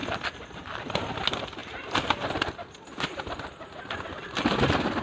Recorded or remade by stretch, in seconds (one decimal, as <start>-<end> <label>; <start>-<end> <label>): 0.0-5.0 recorded